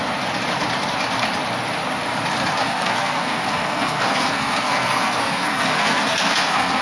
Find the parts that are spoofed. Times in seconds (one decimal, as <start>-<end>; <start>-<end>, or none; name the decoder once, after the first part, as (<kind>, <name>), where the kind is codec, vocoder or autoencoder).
2.6-6.8 (codec, SNAC)